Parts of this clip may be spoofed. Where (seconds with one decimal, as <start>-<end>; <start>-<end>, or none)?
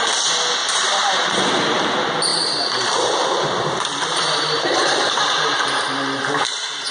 0.6-1.4; 2.3-5.8